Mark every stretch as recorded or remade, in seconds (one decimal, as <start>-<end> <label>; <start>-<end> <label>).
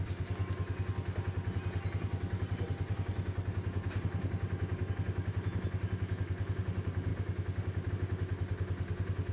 0.0-9.3 recorded